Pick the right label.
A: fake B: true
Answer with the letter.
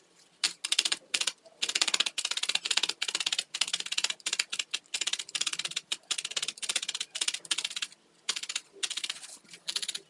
B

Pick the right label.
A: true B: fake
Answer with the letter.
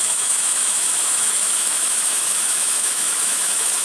B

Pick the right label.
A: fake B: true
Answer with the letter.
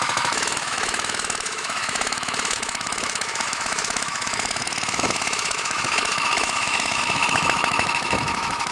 A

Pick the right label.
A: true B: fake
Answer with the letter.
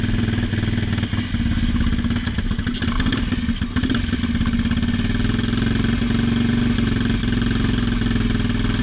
A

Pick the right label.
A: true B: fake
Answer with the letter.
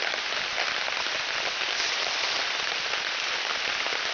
A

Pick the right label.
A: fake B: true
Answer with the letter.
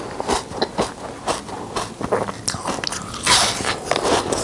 B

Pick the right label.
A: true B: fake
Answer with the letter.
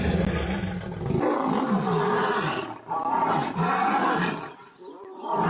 A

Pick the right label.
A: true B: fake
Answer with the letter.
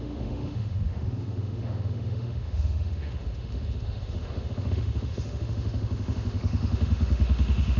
B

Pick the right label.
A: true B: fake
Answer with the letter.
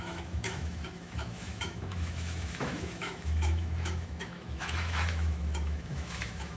B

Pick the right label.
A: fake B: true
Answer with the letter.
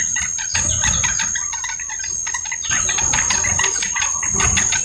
B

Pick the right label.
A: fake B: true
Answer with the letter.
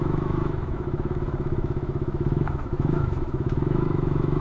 A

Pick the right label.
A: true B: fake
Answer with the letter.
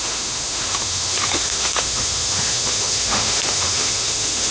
B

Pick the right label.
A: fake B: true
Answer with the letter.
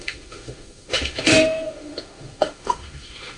A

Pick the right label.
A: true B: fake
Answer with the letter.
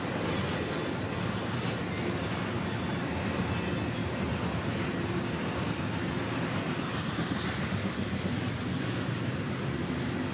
A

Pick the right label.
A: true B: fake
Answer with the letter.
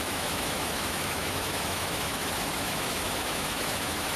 B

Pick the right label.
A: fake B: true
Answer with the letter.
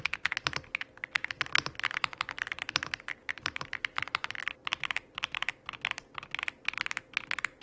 B